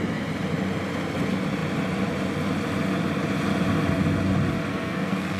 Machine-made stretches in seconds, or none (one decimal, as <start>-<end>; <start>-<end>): 4.7-5.4